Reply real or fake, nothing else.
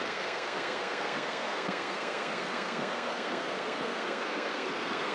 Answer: fake